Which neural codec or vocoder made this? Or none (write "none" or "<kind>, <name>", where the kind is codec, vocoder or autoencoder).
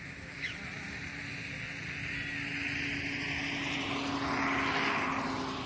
none